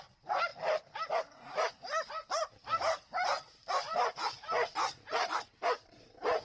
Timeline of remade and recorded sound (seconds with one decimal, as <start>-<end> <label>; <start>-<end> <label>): 0.0-6.4 recorded